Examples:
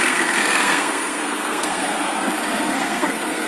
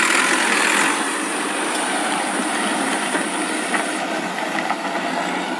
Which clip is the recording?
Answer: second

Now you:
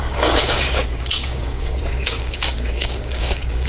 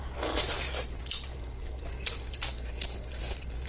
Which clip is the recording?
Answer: second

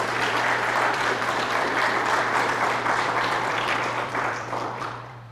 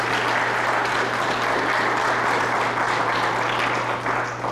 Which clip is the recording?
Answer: second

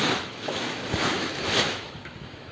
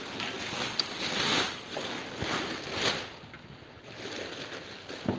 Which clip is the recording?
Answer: second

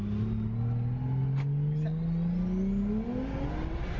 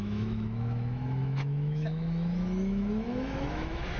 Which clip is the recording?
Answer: first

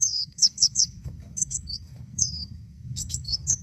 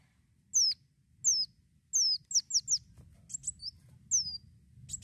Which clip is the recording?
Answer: second